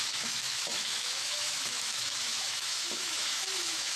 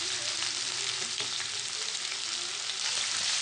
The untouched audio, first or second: second